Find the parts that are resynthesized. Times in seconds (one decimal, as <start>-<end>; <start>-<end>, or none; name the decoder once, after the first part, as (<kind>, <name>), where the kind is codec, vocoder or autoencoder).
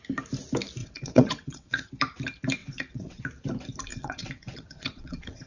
0.8-1.9 (vocoder, WaveNeXt); 2.6-3.2; 3.9-5.5